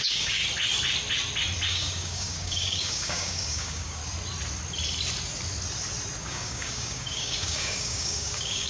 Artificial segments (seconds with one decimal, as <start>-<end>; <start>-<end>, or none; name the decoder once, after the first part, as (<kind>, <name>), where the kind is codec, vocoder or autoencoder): 0.0-0.4 (codec, DAC); 1.7-4.0; 6.2-8.7